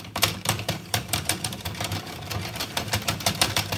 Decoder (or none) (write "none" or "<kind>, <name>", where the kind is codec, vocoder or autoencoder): vocoder, BigVGAN v2